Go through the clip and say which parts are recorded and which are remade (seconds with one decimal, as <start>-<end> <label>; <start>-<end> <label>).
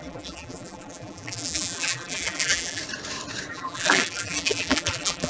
0.0-2.8 remade; 2.8-3.5 recorded; 3.5-5.3 remade